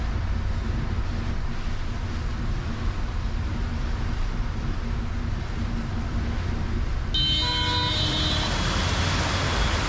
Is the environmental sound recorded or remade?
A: recorded